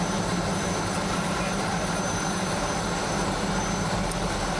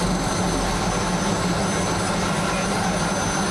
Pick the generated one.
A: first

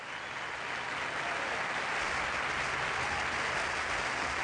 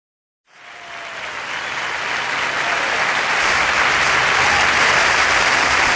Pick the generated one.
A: second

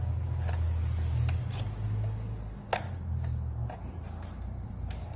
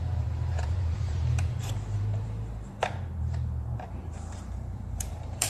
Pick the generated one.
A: second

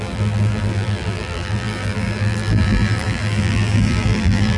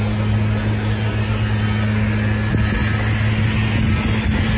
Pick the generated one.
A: first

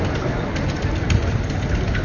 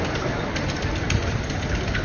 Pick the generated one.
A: second